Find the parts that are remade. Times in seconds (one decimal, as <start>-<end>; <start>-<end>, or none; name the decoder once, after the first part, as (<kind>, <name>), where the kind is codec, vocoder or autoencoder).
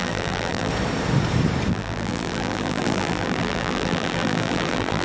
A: 0.0-0.7 (vocoder, BigVGAN v2); 1.7-5.0